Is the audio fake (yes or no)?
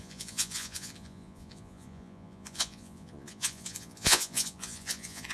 yes